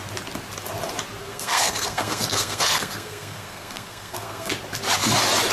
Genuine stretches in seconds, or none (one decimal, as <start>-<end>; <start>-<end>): 0.0-1.2; 4.5-5.5